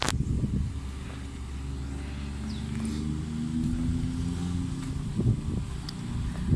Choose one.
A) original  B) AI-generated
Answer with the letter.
A